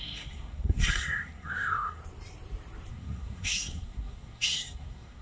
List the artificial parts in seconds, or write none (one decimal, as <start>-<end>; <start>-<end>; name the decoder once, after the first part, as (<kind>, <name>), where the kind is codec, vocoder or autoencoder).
0.0-2.0 (codec, SNAC); 2.9-5.2